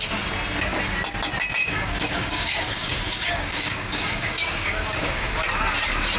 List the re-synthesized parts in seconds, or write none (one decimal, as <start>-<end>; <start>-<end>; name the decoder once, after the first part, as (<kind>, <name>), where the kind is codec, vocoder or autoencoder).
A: 1.6-5.3 (codec, DAC)